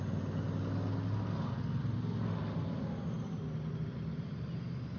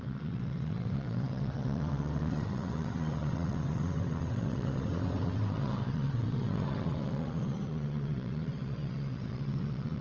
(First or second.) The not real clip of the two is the second